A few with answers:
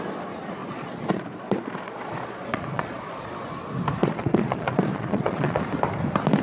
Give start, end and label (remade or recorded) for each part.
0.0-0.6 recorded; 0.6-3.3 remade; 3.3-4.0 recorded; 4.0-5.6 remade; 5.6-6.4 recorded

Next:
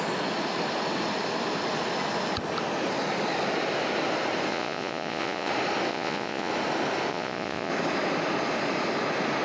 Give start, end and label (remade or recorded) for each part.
0.0-4.5 recorded; 4.5-5.5 remade; 5.5-5.9 recorded; 5.9-6.5 remade; 6.5-7.1 recorded; 7.1-7.7 remade; 7.7-9.4 recorded

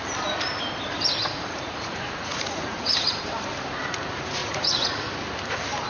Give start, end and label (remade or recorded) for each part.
0.0-1.2 recorded; 1.2-3.2 remade; 3.2-4.4 recorded; 4.4-5.1 remade; 5.1-5.9 recorded

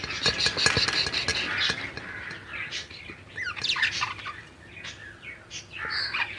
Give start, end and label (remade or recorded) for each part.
0.0-6.4 recorded

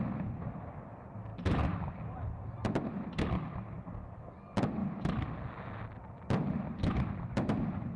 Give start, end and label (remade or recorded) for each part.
0.0-8.0 recorded

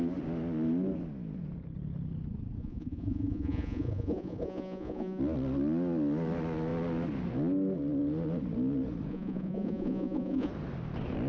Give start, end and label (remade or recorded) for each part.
0.0-2.6 recorded; 2.6-5.2 remade; 5.2-9.1 recorded; 9.1-10.5 remade; 10.5-11.3 recorded

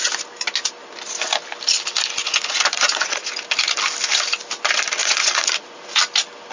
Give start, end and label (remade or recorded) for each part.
0.0-2.2 recorded; 2.2-3.3 remade; 3.3-5.0 recorded; 5.0-6.0 remade; 6.0-6.5 recorded